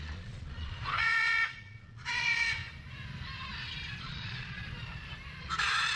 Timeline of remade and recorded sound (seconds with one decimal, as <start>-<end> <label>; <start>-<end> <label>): 0.0-2.6 remade; 2.6-4.0 recorded; 4.0-4.6 remade; 4.6-5.4 recorded; 5.4-6.0 remade